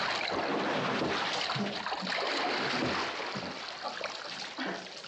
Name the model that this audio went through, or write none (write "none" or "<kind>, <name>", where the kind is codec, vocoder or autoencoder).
none